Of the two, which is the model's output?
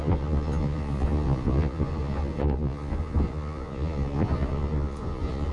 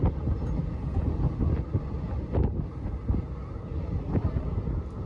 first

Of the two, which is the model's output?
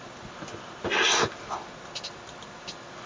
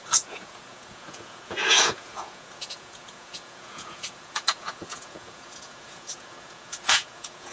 second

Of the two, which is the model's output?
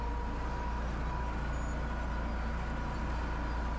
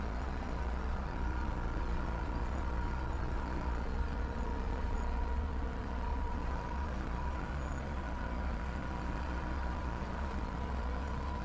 second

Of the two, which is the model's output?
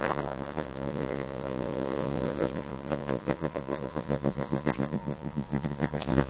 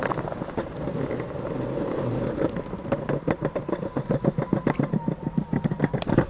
first